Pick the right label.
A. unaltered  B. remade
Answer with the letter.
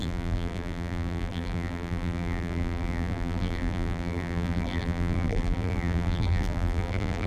B